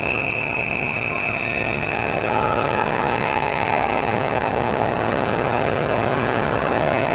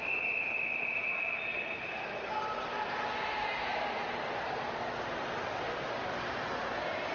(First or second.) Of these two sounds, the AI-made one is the first